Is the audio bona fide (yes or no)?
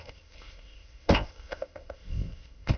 no